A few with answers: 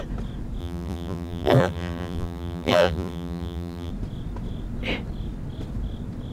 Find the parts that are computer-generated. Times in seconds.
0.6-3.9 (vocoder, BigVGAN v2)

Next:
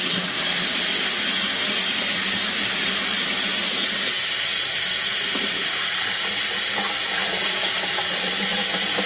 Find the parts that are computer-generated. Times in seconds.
none